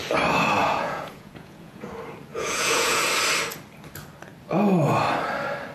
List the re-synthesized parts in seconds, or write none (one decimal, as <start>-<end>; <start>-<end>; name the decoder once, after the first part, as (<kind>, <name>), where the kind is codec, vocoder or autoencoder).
0.6-1.9 (vocoder, Vocos); 2.3-3.0